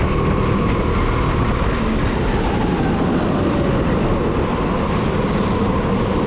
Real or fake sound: real